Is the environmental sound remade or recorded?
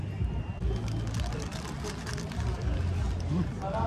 recorded